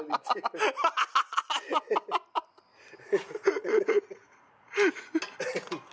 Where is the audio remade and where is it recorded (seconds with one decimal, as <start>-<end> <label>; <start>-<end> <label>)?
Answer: 0.0-2.7 recorded; 2.7-5.2 remade; 5.2-5.9 recorded